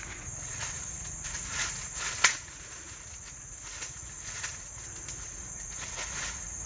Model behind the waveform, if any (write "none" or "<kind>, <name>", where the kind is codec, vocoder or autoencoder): vocoder, Vocos